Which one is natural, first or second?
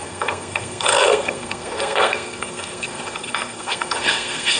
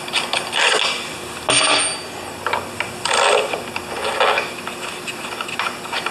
second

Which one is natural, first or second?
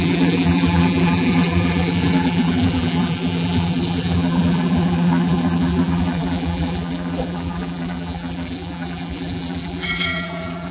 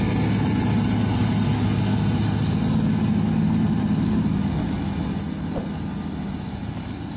second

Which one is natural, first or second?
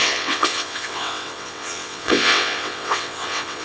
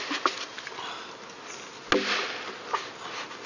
second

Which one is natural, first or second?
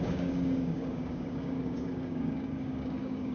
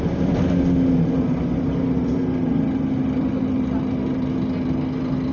second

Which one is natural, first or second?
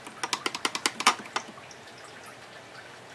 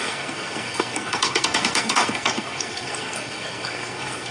first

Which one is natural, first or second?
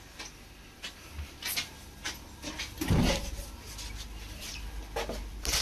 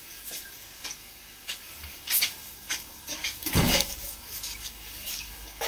first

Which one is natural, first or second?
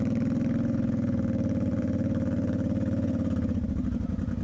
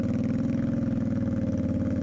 second